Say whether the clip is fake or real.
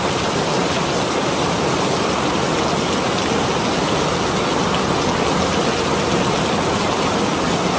real